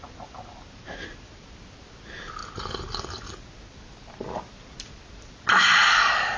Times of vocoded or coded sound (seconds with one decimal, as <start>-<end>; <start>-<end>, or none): none